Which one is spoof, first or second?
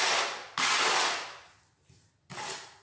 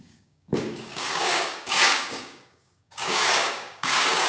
second